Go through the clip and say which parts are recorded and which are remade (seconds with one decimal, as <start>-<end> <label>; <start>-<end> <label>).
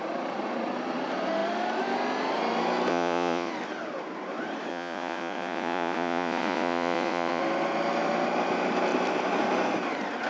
0.0-2.9 recorded; 2.9-3.5 remade; 3.5-4.7 recorded; 4.7-7.4 remade; 7.4-10.3 recorded